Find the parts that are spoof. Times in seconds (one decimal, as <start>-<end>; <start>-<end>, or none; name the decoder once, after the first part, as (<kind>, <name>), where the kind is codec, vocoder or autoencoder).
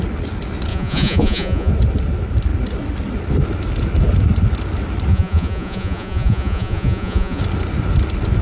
0.7-1.7 (vocoder, Vocos); 5.1-7.4